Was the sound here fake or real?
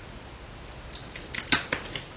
real